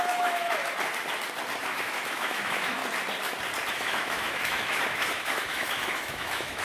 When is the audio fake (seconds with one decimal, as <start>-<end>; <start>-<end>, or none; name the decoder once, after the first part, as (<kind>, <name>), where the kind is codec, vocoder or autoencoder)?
0.0-0.6 (autoencoder, DAC-VAE); 1.6-2.8; 3.7-6.6